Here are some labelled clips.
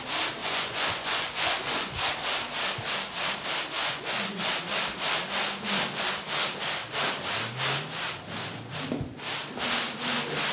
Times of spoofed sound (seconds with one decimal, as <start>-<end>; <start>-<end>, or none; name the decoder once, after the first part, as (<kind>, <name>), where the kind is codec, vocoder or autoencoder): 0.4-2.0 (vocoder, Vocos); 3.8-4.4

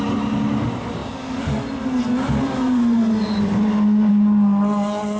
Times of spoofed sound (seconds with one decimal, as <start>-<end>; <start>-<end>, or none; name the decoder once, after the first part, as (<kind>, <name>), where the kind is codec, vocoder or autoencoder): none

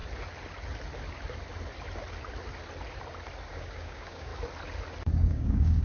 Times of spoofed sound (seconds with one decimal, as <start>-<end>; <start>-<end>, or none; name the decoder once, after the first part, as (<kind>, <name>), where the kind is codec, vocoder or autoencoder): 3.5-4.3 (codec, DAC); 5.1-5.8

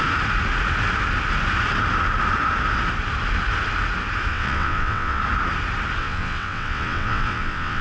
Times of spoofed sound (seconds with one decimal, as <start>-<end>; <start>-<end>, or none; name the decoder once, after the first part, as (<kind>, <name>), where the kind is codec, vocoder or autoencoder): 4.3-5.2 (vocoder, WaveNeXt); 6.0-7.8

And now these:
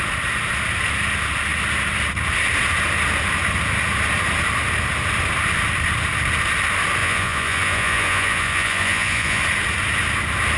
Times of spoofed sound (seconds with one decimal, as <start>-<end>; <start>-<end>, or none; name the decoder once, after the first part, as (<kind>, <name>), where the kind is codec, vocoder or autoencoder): 7.0-9.4 (vocoder, Vocos)